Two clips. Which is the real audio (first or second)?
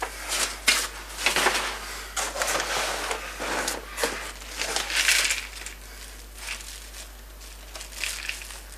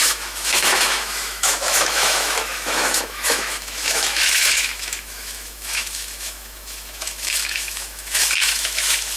first